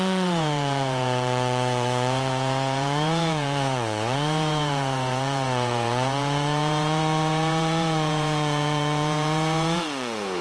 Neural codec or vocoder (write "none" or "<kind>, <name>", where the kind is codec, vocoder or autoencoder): vocoder, Vocos